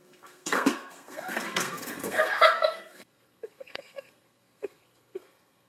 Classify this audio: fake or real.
fake